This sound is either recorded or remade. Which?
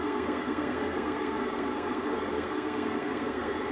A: remade